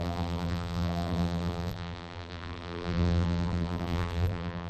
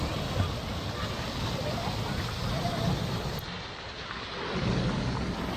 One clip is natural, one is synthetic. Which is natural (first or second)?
second